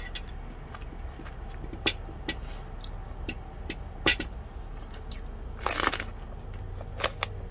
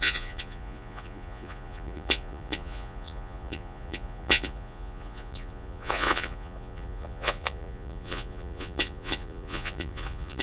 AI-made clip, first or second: second